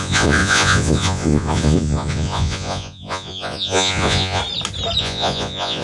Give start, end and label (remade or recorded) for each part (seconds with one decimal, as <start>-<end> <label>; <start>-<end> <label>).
0.0-4.4 remade; 4.4-5.0 recorded; 5.0-5.8 remade